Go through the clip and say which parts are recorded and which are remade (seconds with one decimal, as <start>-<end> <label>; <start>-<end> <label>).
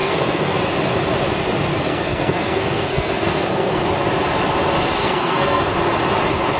0.0-0.6 remade; 0.6-1.7 recorded; 1.7-3.8 remade; 3.8-5.0 recorded; 5.0-5.7 remade; 5.7-6.6 recorded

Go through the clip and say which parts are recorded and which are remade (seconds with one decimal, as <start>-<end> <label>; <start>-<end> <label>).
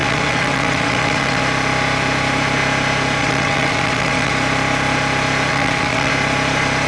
0.0-1.4 remade; 1.4-3.2 recorded; 3.2-4.3 remade; 4.3-5.5 recorded; 5.5-6.1 remade; 6.1-6.9 recorded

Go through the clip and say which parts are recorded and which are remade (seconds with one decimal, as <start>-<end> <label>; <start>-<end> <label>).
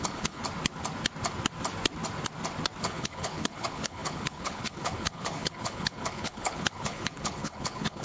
0.0-0.4 remade; 0.4-2.8 recorded; 2.8-8.0 remade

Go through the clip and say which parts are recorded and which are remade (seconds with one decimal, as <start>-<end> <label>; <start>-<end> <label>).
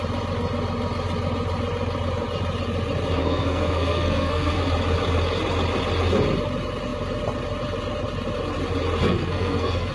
0.0-3.2 recorded; 3.2-4.6 remade; 4.6-9.0 recorded; 9.0-9.9 remade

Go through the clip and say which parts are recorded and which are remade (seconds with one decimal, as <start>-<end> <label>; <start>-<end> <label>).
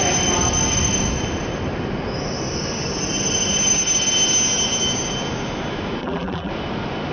0.0-6.0 recorded; 6.0-6.5 remade; 6.5-7.1 recorded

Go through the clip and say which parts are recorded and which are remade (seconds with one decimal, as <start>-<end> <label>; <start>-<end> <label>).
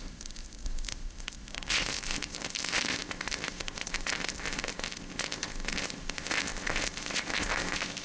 0.0-8.0 remade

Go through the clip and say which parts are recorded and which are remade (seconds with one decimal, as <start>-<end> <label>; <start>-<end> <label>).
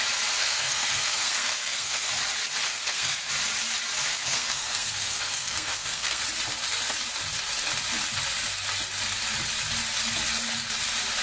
0.0-0.4 recorded; 0.4-2.1 remade; 2.1-2.6 recorded; 2.6-3.3 remade; 3.3-4.1 recorded; 4.1-6.2 remade; 6.2-11.2 recorded